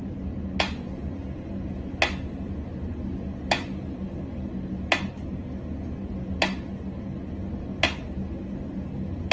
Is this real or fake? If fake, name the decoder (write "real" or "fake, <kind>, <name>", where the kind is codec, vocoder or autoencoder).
real